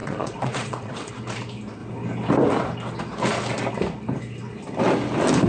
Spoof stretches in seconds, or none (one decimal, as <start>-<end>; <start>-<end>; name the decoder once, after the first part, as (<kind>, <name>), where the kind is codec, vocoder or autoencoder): 0.0-1.1 (vocoder, Vocos)